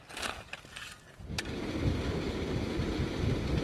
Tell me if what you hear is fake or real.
real